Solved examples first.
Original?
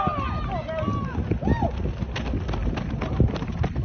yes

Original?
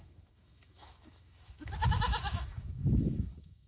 no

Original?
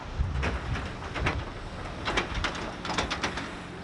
yes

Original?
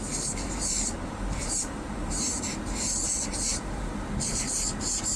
no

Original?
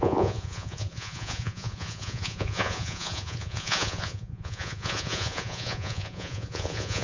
no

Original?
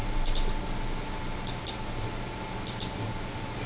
yes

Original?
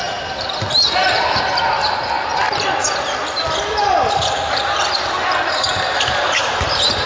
no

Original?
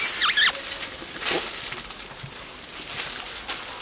yes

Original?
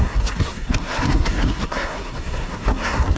no